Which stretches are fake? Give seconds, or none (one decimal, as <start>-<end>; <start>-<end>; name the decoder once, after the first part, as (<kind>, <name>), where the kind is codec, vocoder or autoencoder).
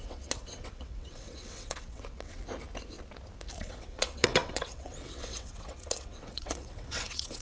0.0-2.4 (vocoder, WaveNeXt); 3.6-7.4